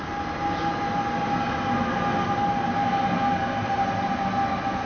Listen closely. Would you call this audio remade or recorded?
recorded